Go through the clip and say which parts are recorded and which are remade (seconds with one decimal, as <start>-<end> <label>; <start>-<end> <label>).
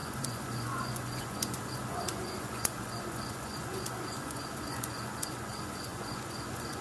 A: 0.0-6.8 remade